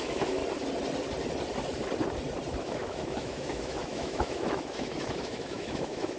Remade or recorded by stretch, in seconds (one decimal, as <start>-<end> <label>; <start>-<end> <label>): 0.0-0.4 remade; 0.4-2.6 recorded; 2.6-6.2 remade